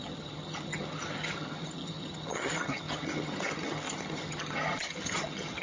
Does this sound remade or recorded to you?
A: remade